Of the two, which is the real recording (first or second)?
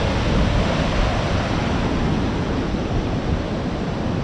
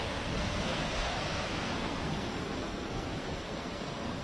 first